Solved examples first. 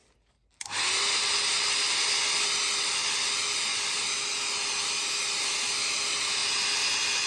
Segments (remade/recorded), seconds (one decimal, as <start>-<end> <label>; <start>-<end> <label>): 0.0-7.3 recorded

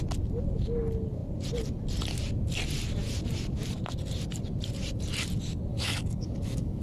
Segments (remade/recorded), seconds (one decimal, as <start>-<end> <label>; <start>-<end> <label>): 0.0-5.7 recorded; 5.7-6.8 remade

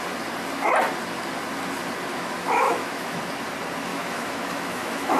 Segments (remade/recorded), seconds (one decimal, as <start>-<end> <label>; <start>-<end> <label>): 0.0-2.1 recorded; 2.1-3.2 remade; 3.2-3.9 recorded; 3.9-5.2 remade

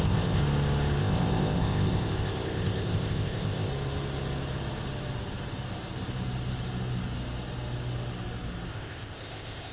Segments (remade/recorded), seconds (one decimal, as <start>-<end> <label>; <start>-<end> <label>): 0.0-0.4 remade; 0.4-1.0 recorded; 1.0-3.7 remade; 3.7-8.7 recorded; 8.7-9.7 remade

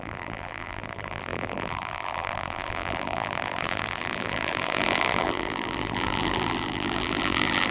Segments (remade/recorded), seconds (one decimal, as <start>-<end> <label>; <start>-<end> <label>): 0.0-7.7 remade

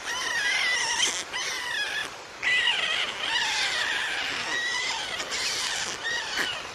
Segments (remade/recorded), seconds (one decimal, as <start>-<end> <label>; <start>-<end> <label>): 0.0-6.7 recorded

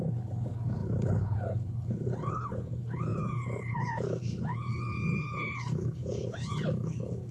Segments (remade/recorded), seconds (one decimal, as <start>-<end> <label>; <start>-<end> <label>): 0.0-7.3 remade

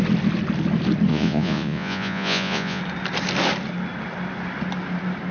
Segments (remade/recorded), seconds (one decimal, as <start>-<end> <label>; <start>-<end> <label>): 0.0-1.1 recorded; 1.1-2.8 remade; 2.8-5.3 recorded